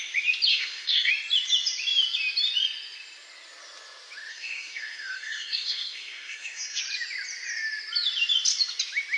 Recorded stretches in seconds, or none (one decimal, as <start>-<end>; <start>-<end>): 0.0-0.5; 1.1-4.3; 6.8-9.2